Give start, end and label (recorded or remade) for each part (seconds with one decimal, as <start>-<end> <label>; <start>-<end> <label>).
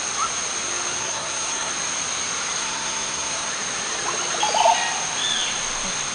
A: 0.0-1.0 recorded; 1.0-1.7 remade; 1.7-2.6 recorded; 2.6-3.5 remade; 3.5-6.1 recorded